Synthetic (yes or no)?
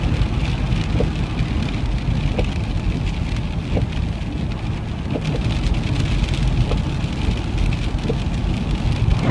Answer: no